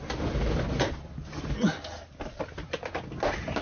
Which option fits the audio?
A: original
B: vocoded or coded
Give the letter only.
A